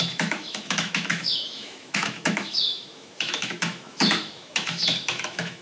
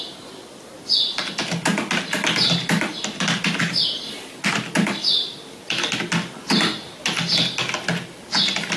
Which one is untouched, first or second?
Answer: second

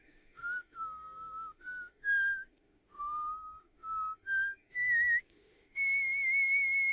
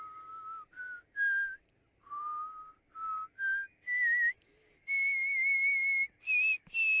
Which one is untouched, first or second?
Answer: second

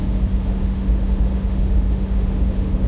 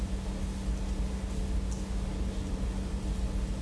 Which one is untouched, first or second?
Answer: second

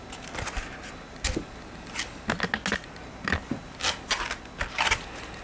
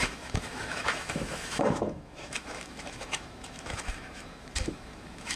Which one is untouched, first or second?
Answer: first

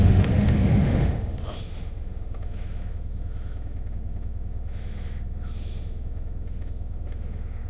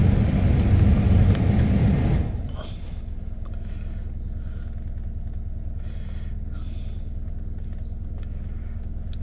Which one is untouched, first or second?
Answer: second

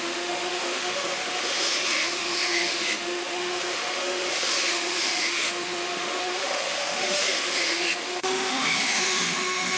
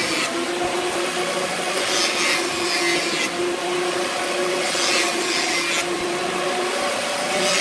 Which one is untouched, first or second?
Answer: second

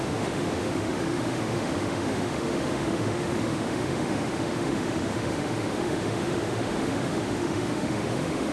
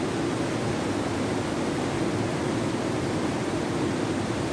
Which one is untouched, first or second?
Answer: second